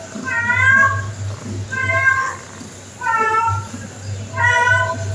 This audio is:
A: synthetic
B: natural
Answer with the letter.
B